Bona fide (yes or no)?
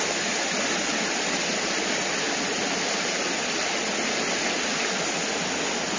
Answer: yes